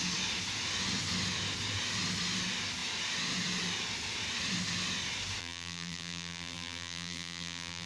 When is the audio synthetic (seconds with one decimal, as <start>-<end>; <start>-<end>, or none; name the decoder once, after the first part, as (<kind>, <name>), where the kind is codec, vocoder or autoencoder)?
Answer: 5.4-7.9 (vocoder, BigVGAN v2)